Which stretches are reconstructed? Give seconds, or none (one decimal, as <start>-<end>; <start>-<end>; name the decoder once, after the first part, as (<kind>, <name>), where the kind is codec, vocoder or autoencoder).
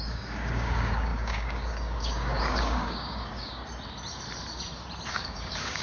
0.0-3.6 (codec, DAC); 5.1-5.8